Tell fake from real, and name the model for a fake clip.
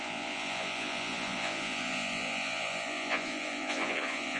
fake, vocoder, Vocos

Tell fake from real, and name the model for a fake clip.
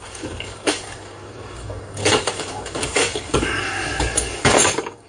fake, codec, DAC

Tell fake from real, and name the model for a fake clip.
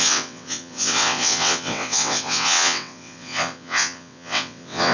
fake, vocoder, WaveNeXt